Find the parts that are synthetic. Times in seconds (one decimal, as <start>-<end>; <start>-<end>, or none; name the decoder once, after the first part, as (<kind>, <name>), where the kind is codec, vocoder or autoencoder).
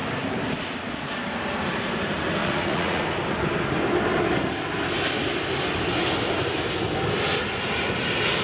2.4-3.0 (vocoder, Vocos)